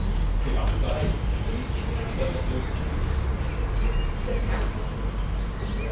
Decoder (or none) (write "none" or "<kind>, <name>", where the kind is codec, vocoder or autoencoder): none